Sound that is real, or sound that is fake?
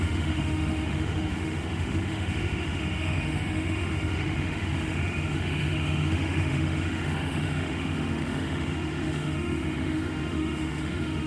fake